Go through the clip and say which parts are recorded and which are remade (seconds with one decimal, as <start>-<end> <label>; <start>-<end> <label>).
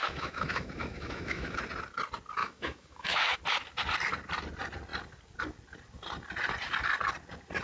0.0-1.6 remade; 1.6-2.4 recorded; 2.4-3.4 remade; 3.4-7.6 recorded